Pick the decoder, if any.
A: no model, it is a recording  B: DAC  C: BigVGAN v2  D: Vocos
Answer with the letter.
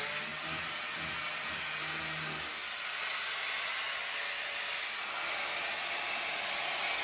A